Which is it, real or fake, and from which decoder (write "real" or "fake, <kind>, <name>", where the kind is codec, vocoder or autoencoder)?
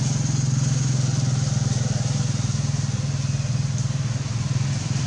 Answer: real